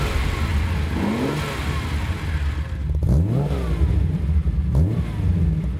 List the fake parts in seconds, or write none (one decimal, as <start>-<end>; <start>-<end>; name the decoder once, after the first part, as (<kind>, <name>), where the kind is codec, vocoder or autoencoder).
none